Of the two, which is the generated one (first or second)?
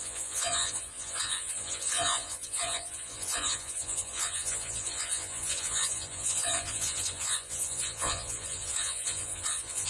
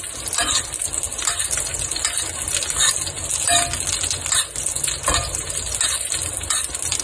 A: first